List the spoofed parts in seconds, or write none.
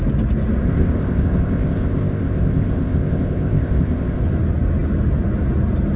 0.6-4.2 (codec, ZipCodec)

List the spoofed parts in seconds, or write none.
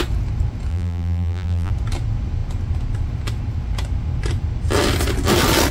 0.7-1.7 (vocoder, BigVGAN v2)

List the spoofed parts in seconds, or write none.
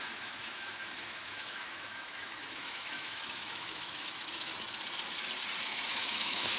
0.0-4.5 (autoencoder, DAC-VAE); 5.6-6.6